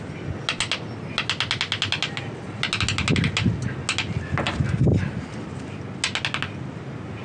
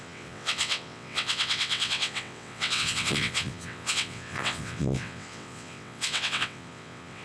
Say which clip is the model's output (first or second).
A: second